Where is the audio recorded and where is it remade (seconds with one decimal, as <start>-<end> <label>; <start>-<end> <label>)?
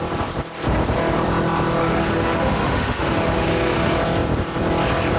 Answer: 0.0-1.8 recorded; 1.8-3.9 remade; 3.9-5.2 recorded